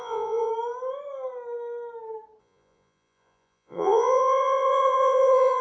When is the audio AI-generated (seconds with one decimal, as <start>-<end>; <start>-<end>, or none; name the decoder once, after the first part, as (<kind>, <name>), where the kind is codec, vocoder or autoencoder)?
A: 0.0-0.5 (vocoder, Vocos); 2.4-5.6